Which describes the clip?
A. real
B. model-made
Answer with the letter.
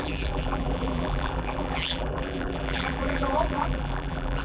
B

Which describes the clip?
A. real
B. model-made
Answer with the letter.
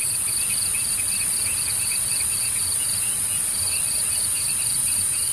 B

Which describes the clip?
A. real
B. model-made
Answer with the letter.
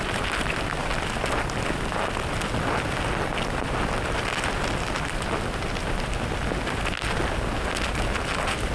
A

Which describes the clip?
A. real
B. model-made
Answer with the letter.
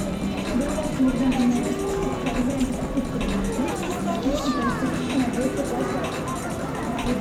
A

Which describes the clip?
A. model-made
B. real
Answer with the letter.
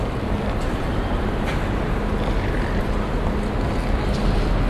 B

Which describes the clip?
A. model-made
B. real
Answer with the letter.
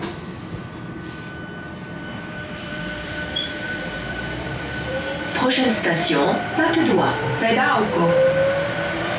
A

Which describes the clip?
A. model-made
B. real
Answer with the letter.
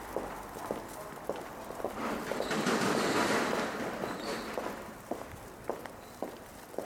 A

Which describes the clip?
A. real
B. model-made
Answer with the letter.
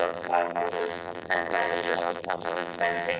B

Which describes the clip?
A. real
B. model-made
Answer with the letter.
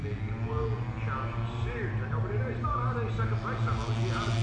A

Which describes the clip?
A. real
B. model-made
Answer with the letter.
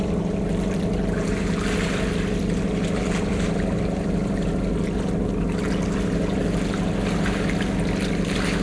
A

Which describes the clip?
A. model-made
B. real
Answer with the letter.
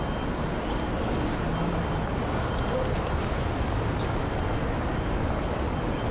B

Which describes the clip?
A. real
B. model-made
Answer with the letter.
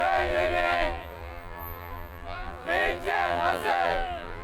B